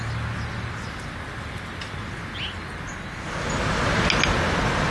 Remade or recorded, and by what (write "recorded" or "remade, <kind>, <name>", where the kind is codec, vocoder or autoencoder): recorded